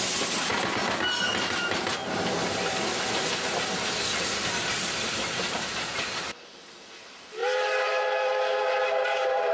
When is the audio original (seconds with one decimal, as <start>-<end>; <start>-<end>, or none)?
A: 0.0-9.5